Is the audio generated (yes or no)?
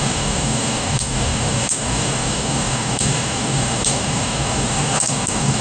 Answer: yes